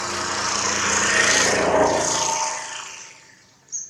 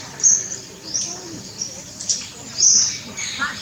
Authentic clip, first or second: first